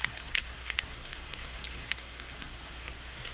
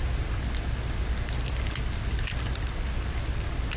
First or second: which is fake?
first